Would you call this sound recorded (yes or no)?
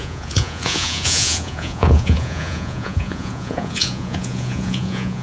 no